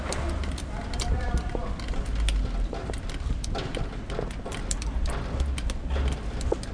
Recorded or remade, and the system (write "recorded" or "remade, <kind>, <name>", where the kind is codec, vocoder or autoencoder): recorded